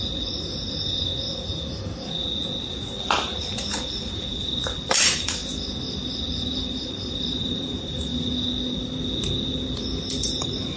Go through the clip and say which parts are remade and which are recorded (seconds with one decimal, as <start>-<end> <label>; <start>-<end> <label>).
0.0-1.5 remade; 1.5-3.9 recorded; 3.9-5.4 remade; 5.4-6.3 recorded; 6.3-8.1 remade; 8.1-10.3 recorded; 10.3-10.8 remade